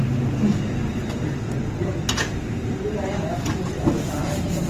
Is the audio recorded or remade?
recorded